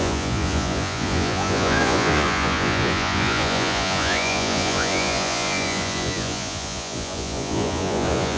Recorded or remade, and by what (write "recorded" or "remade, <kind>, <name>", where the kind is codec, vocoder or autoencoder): remade, vocoder, Vocos